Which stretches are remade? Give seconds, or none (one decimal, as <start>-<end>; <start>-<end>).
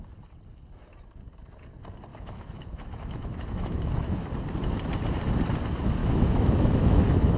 2.1-4.3; 6.0-7.0